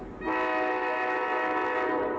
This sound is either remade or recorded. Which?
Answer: recorded